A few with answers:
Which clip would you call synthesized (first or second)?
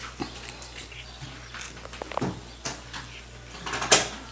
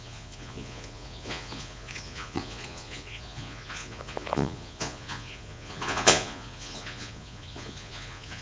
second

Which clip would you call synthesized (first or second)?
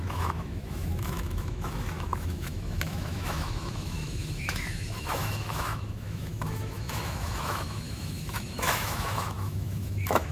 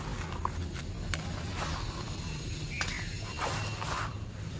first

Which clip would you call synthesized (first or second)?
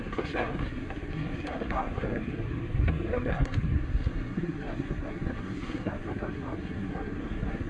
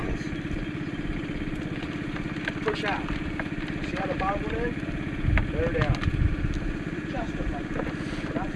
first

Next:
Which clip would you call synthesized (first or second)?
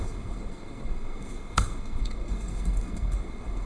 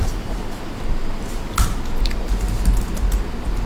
first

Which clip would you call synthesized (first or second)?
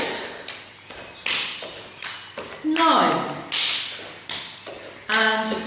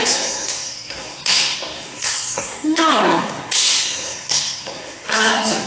second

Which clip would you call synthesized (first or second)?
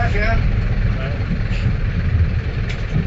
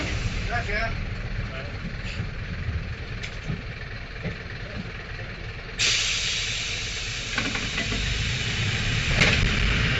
second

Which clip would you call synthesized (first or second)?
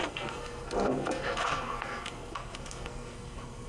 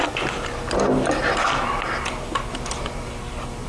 first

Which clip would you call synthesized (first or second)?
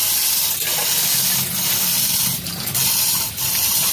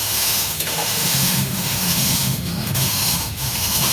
second